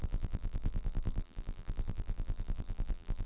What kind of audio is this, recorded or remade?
remade